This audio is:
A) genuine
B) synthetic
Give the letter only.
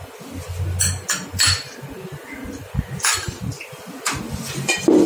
A